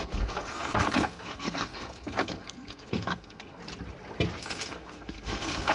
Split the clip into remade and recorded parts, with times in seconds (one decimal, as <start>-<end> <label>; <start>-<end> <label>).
0.0-3.6 remade; 3.6-4.4 recorded; 4.4-5.7 remade